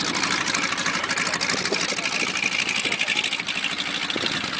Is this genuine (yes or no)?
yes